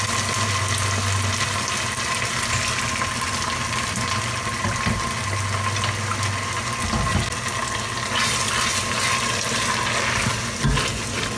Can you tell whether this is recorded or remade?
recorded